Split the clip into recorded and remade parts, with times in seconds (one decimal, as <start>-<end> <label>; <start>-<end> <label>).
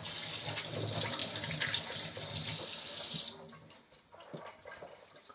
0.0-5.3 recorded